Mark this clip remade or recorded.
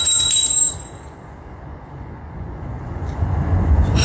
remade